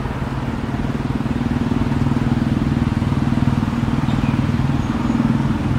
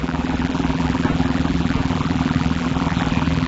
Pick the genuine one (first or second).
first